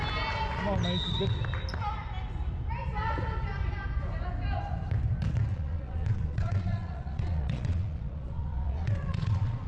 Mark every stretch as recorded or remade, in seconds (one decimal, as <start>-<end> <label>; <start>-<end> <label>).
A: 0.0-5.5 recorded; 5.5-9.7 remade